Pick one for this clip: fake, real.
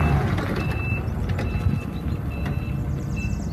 real